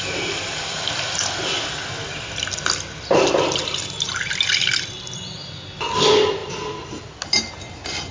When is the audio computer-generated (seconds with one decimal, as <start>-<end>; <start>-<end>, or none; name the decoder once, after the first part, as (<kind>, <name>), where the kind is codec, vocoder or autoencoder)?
none